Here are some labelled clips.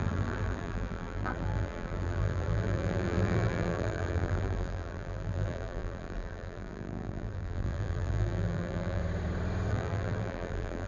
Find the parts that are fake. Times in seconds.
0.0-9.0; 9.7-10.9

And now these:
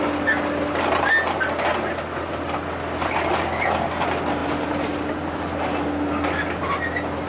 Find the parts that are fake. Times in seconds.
none

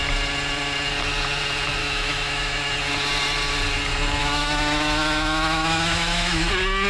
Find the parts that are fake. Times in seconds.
1.8-2.7; 4.2-6.5

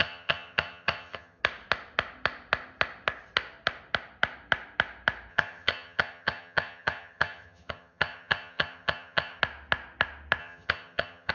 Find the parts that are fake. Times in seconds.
0.0-1.4; 5.3-9.4; 10.4-11.3

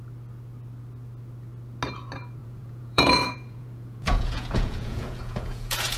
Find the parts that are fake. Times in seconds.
2.4-6.0

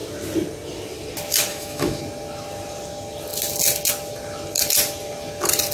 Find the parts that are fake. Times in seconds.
1.5-2.0